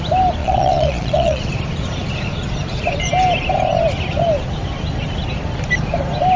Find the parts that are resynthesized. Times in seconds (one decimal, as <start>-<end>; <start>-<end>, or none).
0.4-1.4